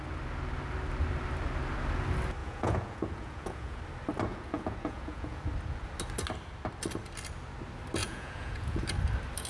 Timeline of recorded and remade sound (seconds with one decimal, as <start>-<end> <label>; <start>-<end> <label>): 0.0-2.4 recorded; 2.4-3.8 remade; 3.8-4.3 recorded; 4.3-5.4 remade; 5.4-8.0 recorded; 8.0-8.8 remade; 8.8-9.5 recorded